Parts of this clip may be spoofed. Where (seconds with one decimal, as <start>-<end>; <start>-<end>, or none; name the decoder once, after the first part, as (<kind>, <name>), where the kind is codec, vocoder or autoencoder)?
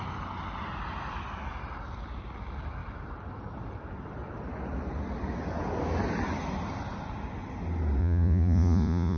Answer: 8.0-9.2 (vocoder, Vocos)